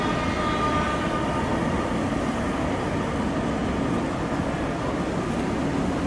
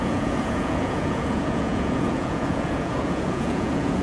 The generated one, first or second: second